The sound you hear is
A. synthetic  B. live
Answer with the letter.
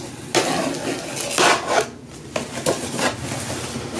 B